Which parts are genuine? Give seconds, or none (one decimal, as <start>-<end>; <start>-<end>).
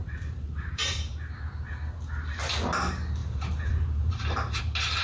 1.2-3.2; 4.6-5.0